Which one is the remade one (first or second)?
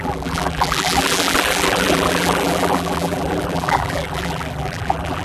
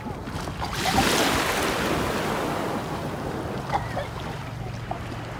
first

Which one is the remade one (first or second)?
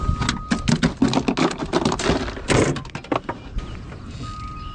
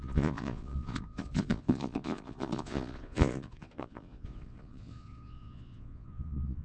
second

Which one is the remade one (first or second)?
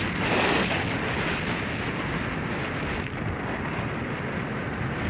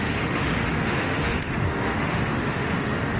second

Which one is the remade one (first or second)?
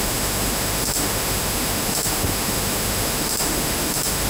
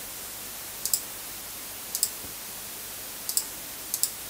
first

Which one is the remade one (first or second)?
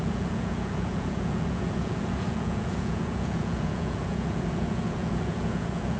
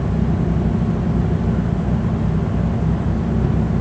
first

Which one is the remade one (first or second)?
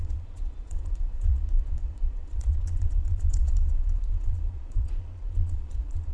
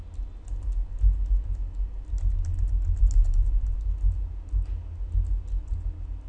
first